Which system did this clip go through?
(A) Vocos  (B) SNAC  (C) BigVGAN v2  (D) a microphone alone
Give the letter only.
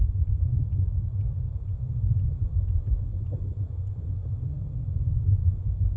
A